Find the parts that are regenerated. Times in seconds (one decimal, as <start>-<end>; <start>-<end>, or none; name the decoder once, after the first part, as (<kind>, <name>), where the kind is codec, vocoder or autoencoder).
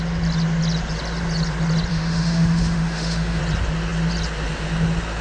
1.9-3.4 (autoencoder, DAC-VAE)